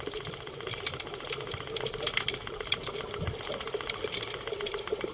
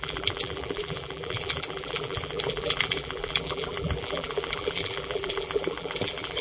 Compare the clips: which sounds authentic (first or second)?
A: first